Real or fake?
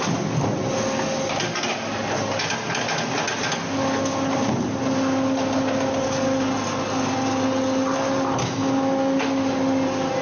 real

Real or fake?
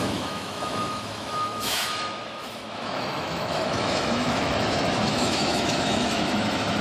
fake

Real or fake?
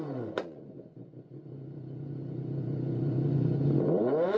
fake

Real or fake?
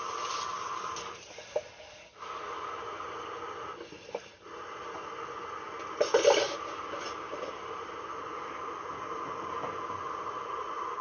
real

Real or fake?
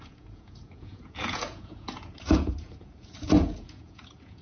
fake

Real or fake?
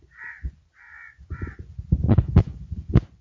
fake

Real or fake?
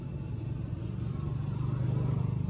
real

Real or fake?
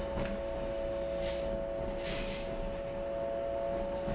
real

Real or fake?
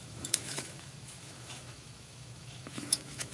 fake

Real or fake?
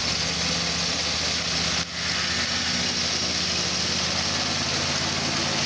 real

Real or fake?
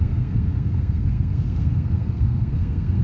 fake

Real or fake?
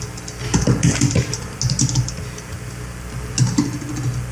real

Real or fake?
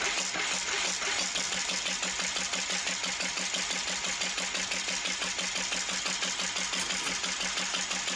real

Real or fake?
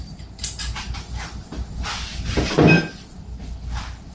real